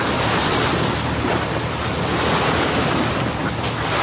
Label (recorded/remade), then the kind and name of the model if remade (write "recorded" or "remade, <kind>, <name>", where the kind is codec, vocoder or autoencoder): recorded